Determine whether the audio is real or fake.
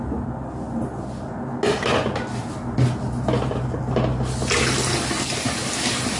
real